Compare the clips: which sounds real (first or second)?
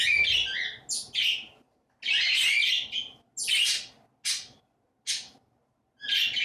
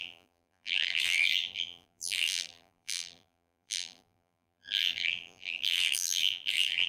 first